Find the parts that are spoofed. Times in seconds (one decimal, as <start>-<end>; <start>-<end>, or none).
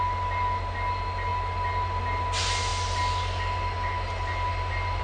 none